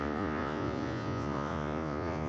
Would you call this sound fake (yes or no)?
yes